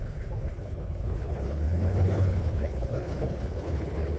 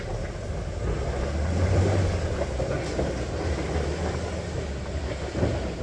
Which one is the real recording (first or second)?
second